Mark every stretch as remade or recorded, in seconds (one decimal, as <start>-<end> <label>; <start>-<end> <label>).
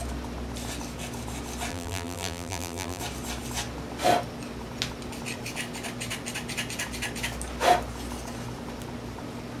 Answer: 0.0-1.7 recorded; 1.7-3.0 remade; 3.0-9.6 recorded